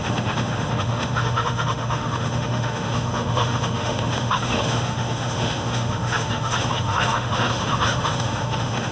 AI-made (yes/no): yes